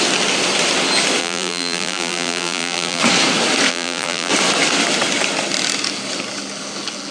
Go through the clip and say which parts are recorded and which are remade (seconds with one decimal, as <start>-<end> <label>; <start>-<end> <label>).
0.0-1.2 recorded; 1.2-3.0 remade; 3.0-3.7 recorded; 3.7-4.3 remade; 4.3-7.1 recorded